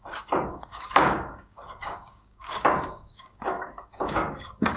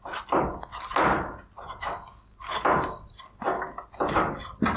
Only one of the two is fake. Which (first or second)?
first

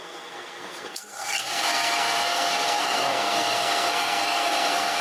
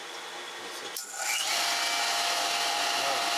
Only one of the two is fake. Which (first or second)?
first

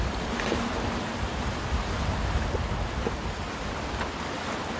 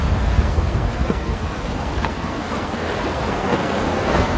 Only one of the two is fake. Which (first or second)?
second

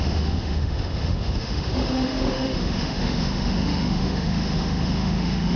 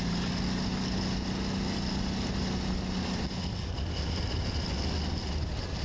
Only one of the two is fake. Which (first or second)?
first